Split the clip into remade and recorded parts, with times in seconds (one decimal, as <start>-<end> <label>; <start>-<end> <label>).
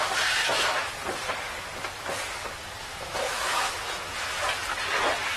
0.0-0.4 recorded; 0.4-0.9 remade; 0.9-2.8 recorded; 2.8-4.5 remade; 4.5-5.4 recorded